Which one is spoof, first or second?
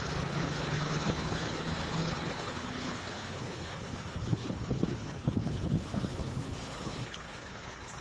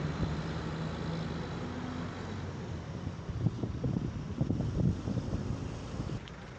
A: first